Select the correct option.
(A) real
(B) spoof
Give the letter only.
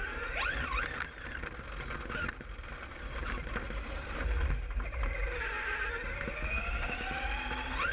A